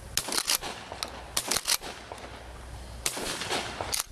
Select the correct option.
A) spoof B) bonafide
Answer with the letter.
B